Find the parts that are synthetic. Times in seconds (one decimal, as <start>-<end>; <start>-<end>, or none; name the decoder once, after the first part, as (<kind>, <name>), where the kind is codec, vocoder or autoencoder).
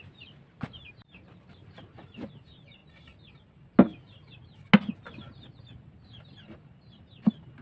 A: 0.0-2.8 (vocoder, BigVGAN v2); 5.6-7.6